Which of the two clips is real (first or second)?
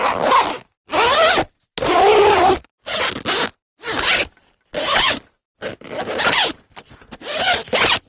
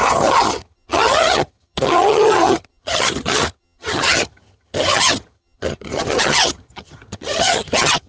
first